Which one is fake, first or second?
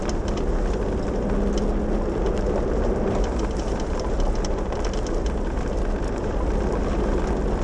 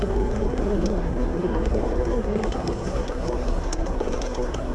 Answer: second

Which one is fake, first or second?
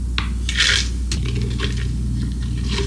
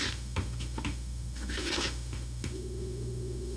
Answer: second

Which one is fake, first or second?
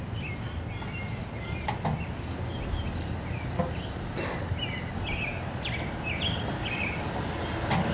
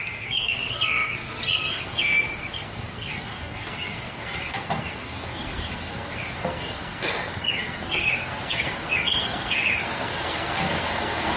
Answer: second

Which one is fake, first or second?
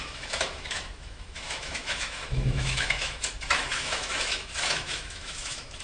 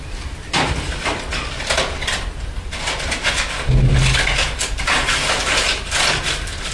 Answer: first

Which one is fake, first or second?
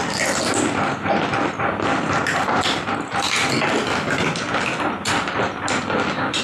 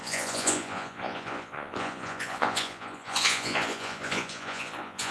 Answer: second